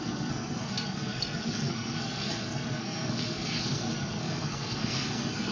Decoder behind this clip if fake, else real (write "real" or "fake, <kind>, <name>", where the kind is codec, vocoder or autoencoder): fake, codec, SNAC